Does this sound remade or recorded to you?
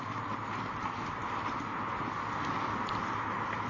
recorded